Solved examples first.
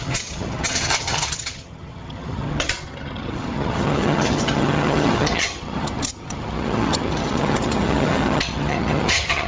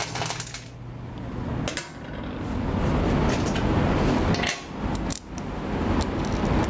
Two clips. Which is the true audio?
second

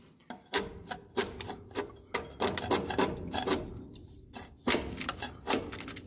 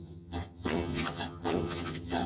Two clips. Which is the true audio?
first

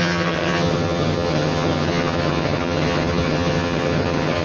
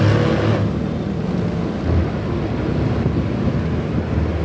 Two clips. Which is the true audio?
second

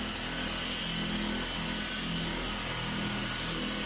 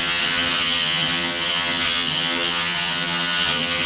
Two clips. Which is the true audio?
first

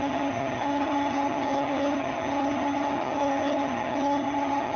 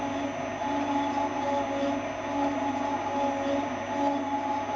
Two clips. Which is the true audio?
second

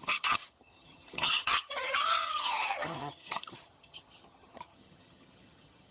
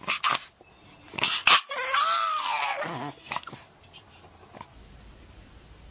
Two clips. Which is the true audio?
second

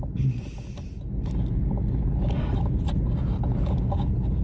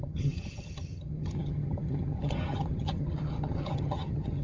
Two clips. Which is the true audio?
first